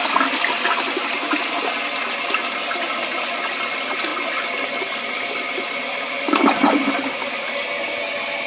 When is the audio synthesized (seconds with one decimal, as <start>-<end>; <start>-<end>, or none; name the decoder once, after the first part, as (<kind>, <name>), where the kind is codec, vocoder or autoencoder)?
none